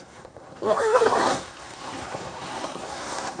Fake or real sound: fake